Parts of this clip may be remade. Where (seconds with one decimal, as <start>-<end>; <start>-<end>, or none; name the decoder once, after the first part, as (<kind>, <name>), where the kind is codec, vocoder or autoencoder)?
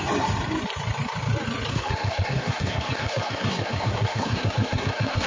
1.7-5.3 (codec, SNAC)